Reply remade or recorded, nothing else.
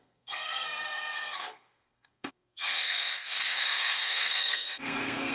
remade